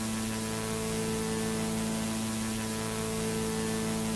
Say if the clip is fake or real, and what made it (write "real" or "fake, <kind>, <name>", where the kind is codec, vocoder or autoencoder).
real